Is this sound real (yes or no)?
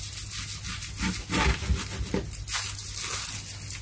yes